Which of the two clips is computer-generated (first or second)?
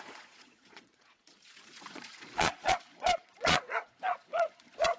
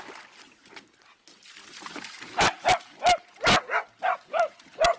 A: first